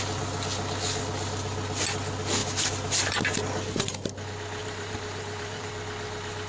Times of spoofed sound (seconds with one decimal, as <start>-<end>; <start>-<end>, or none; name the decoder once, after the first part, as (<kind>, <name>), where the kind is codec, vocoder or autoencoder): 4.6-5.7 (vocoder, BigVGAN v2)